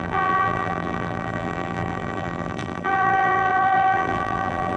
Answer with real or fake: fake